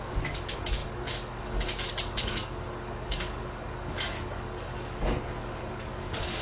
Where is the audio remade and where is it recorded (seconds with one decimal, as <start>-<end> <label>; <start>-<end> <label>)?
0.0-6.4 remade